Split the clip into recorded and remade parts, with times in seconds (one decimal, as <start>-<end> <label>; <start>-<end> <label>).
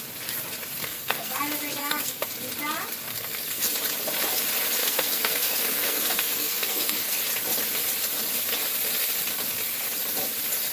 0.0-0.8 recorded; 0.8-1.4 remade; 1.4-1.8 recorded; 1.8-2.3 remade; 2.3-3.1 recorded; 3.1-3.7 remade; 3.7-4.8 recorded; 4.8-7.2 remade; 7.2-10.7 recorded